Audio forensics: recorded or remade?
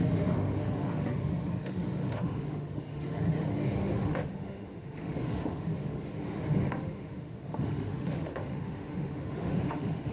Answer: remade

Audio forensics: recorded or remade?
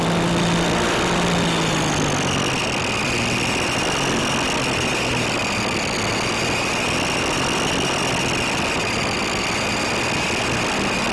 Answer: recorded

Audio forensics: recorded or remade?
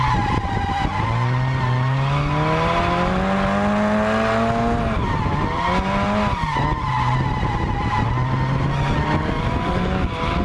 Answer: recorded